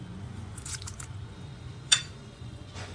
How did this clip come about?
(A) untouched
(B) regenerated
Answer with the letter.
B